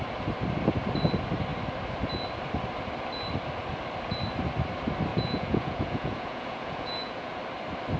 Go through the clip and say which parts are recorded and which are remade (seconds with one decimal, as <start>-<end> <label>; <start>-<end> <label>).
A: 0.0-5.1 recorded; 5.1-7.4 remade; 7.4-8.0 recorded